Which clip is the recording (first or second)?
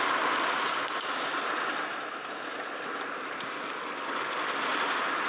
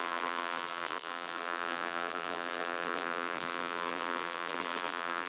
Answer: first